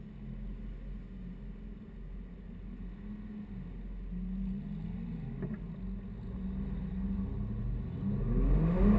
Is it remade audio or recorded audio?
recorded